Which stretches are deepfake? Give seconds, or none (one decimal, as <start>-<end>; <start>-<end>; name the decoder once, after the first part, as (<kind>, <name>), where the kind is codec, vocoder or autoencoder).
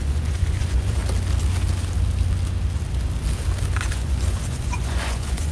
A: 0.0-1.0 (vocoder, Vocos); 3.9-5.5